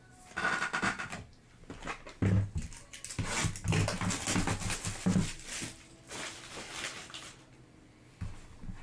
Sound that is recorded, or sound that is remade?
recorded